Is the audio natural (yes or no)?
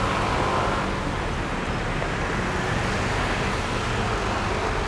yes